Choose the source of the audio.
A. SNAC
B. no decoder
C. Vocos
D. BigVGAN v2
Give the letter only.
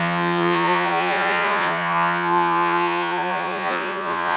C